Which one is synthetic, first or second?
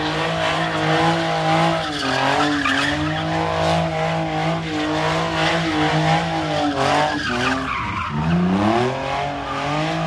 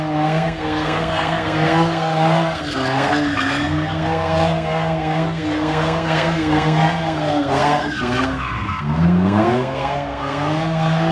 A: second